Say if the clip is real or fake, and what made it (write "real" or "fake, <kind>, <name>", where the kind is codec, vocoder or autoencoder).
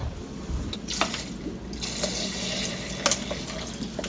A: real